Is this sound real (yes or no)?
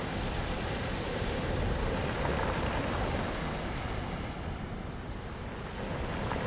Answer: yes